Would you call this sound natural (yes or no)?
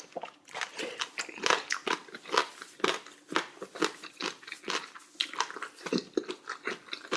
yes